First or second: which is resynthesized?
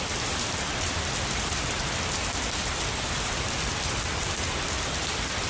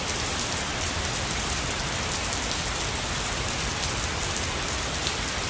first